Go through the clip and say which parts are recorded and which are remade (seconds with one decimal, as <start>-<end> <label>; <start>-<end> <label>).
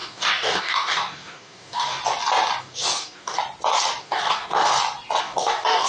0.0-2.0 remade; 2.0-2.6 recorded; 2.6-3.4 remade; 3.4-4.0 recorded; 4.0-4.7 remade; 4.7-5.2 recorded; 5.2-5.9 remade